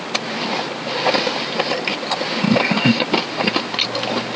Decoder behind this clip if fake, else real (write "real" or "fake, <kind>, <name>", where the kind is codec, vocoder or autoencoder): real